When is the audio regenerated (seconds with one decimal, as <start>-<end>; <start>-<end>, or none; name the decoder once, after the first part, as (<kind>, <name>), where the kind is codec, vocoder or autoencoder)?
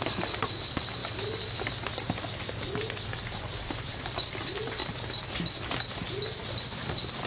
0.0-1.0 (vocoder, BigVGAN v2); 3.2-4.8; 6.6-7.3